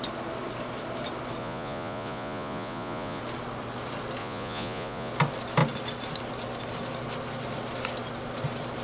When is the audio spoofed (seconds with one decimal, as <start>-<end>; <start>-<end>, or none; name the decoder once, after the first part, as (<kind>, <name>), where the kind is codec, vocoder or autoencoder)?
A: 1.4-3.2 (vocoder, Vocos); 4.2-5.1